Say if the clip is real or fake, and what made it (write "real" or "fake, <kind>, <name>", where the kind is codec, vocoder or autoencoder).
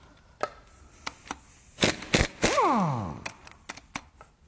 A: real